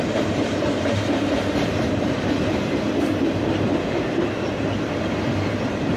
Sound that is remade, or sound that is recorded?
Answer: remade